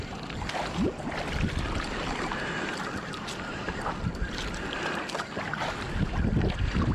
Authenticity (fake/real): real